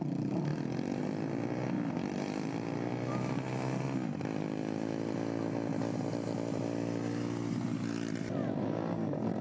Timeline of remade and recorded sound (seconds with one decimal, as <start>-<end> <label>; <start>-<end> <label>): 0.0-8.4 recorded; 8.4-9.4 remade